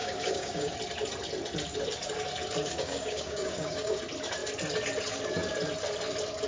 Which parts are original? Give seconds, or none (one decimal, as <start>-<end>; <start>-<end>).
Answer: 0.7-2.7; 4.0-6.5